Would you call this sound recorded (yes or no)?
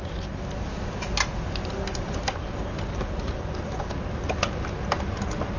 yes